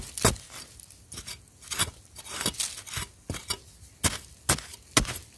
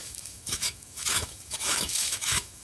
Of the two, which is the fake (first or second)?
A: second